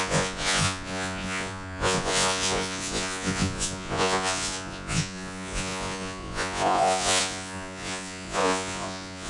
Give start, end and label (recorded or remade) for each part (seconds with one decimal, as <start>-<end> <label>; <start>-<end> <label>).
0.0-9.3 remade